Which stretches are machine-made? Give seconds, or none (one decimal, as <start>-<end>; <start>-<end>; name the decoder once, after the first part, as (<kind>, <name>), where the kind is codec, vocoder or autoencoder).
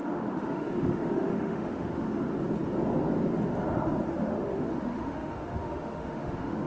0.0-2.3 (autoencoder, DAC-VAE); 4.1-6.7